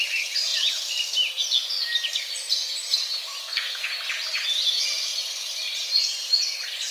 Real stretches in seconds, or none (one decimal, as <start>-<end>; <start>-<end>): 0.0-3.4; 3.9-6.9